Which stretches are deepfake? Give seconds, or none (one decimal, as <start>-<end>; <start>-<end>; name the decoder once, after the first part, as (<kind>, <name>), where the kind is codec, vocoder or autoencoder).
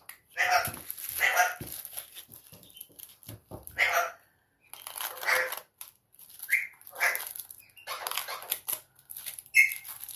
none